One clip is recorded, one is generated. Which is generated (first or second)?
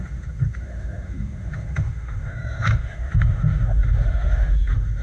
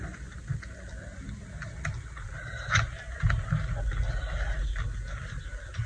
first